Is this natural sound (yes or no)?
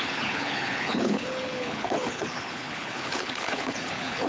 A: no